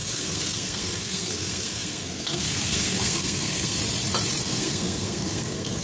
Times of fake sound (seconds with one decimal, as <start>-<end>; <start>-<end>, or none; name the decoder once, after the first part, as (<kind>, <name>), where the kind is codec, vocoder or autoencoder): 0.0-3.8 (codec, SNAC); 4.4-5.8